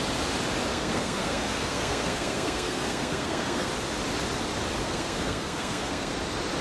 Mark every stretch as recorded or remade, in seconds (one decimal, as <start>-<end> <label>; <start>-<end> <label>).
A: 0.0-0.7 recorded; 0.7-3.7 remade; 3.7-4.8 recorded; 4.8-6.1 remade; 6.1-6.6 recorded